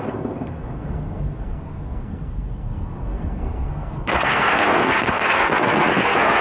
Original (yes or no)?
no